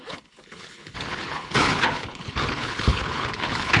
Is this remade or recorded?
remade